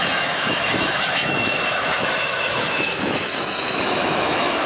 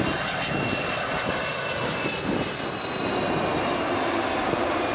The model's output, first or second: first